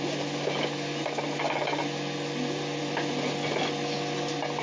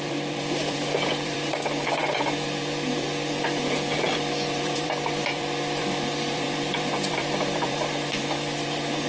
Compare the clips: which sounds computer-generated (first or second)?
second